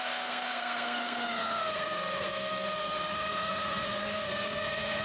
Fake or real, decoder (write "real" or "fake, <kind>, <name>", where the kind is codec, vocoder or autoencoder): fake, codec, SNAC